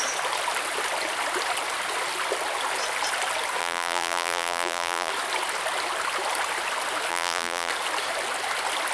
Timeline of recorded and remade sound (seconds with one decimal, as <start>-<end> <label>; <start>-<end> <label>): 0.0-3.6 recorded; 3.6-5.1 remade; 5.1-7.1 recorded; 7.1-7.7 remade; 7.7-8.9 recorded